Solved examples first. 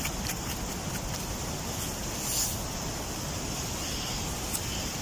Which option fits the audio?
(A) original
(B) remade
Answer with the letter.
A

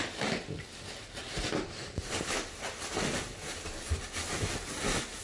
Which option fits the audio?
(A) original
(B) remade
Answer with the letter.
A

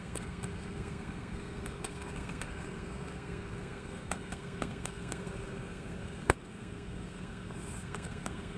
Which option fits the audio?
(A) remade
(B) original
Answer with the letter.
A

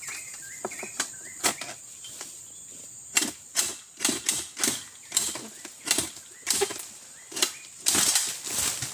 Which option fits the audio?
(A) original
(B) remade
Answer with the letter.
A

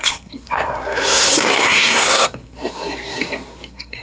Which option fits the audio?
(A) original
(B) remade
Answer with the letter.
B